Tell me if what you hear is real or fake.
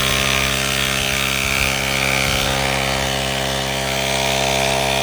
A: real